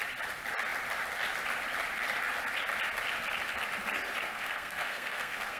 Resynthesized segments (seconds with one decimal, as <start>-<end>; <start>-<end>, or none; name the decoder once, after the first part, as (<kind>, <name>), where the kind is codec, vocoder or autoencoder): 4.2-5.6 (codec, SNAC)